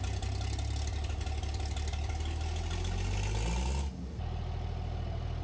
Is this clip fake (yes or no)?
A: no